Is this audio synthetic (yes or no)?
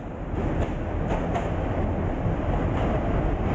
no